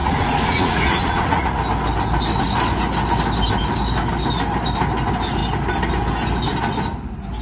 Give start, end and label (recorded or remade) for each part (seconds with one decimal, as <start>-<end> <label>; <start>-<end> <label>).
0.0-1.6 remade; 1.6-7.4 recorded